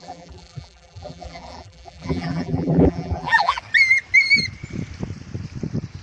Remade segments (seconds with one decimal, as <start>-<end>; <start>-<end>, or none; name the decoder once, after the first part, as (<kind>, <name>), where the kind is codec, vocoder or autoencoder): 0.0-3.6 (vocoder, BigVGAN v2)